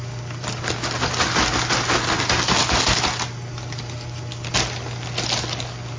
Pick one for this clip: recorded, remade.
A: recorded